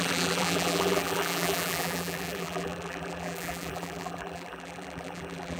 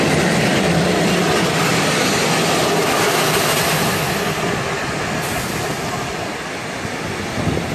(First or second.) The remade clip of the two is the first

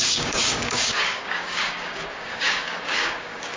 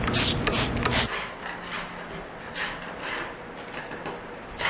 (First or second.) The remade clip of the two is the first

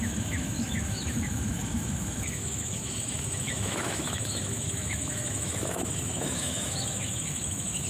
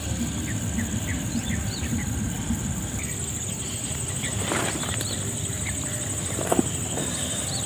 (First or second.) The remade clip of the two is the first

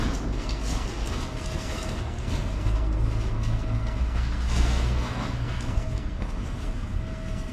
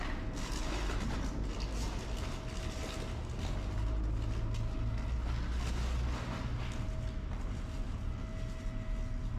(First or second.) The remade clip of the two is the first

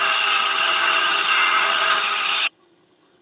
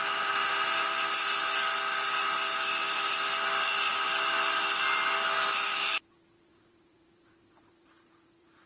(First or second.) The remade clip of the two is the first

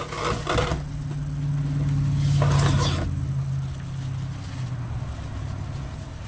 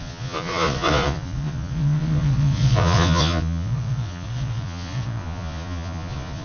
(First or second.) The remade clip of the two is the second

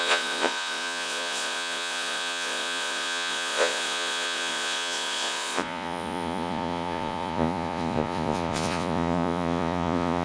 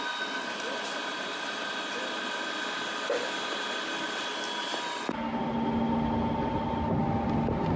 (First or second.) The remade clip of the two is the first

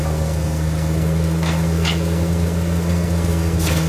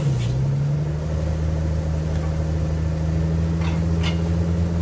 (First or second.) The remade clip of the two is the first